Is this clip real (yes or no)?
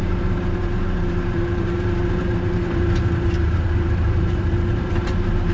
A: no